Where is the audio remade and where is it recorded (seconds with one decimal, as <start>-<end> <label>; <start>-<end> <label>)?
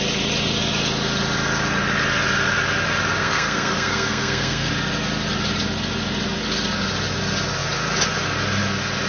0.0-3.2 recorded; 3.2-4.7 remade; 4.7-9.1 recorded